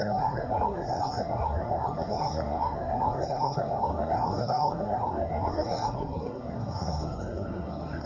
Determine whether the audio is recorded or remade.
remade